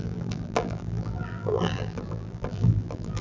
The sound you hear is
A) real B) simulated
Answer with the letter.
B